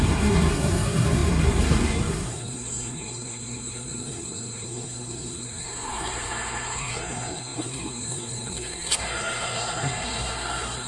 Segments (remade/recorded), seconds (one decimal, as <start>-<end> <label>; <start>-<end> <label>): 0.0-10.9 remade